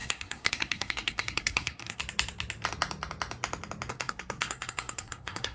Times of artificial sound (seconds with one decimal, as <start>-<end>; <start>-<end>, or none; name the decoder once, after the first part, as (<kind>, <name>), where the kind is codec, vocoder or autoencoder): 0.0-2.0 (codec, SNAC); 3.9-5.5